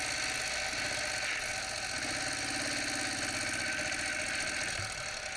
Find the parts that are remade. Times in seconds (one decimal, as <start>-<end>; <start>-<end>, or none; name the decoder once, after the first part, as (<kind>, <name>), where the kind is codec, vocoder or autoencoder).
none